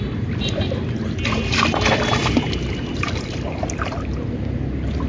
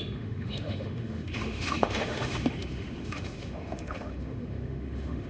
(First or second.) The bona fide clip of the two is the first